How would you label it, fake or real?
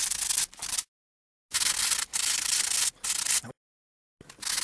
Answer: real